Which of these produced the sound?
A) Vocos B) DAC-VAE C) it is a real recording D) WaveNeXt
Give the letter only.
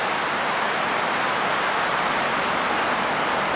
C